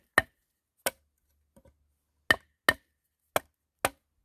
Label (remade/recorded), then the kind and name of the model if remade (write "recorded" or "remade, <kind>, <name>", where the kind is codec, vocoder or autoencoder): recorded